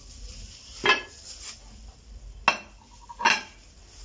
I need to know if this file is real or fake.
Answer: real